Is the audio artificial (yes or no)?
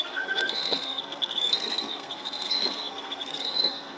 yes